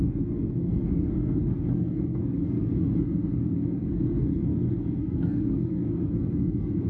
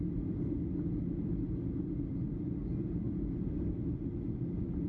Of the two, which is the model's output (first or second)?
first